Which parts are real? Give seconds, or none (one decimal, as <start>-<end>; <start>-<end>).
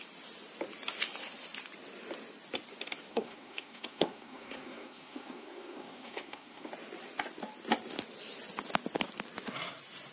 0.0-3.1; 6.7-10.1